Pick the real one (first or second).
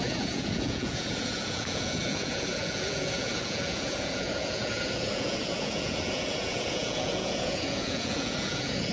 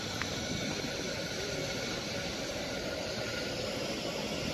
second